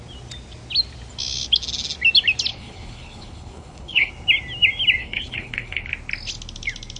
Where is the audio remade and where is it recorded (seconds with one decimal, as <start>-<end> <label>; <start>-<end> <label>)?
0.0-2.5 recorded; 2.5-4.1 remade; 4.1-5.0 recorded; 5.0-5.9 remade; 5.9-7.0 recorded